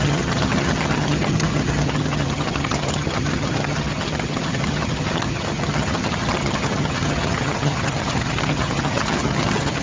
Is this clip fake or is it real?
fake